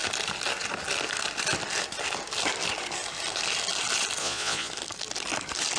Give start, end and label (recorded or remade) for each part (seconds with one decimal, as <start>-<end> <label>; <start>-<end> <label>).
0.0-4.2 recorded; 4.2-4.7 remade; 4.7-5.8 recorded